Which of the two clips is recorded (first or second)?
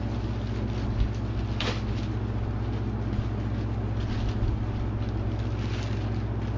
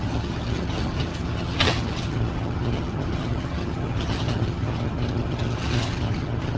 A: first